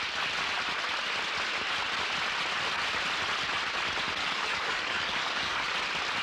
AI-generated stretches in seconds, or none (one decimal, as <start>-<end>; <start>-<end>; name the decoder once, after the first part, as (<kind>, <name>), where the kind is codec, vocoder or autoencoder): 4.2-5.7 (codec, DAC)